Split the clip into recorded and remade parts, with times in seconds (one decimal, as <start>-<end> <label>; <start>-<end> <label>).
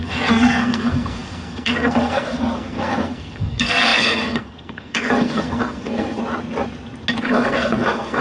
0.0-6.2 remade; 6.2-7.2 recorded; 7.2-8.2 remade